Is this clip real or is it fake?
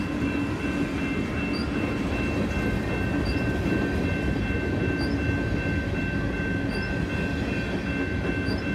real